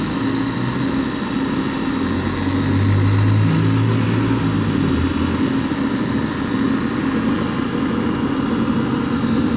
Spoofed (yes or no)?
no